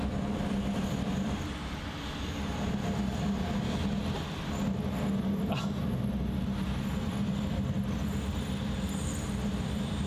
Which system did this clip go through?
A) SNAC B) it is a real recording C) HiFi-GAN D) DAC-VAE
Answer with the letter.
B